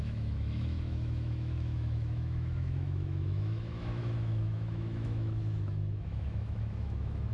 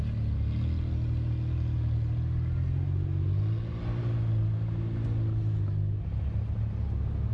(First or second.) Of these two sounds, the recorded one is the second